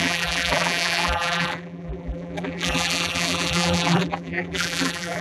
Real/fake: fake